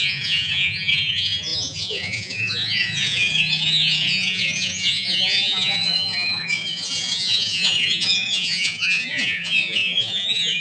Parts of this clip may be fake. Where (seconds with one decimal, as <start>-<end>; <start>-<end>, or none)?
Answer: 0.0-10.6